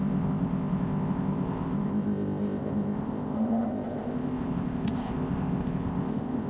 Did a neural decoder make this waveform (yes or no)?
yes